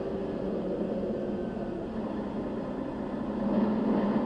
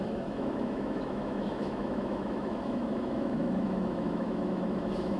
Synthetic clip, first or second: second